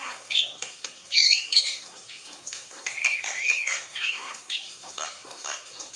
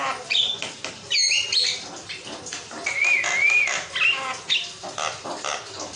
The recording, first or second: second